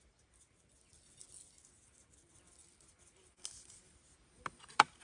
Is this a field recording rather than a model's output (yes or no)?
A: yes